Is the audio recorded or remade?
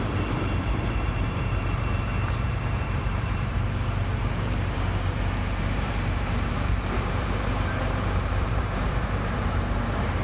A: remade